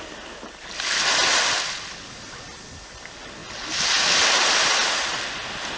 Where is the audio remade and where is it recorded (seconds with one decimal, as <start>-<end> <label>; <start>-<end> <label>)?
0.0-5.8 recorded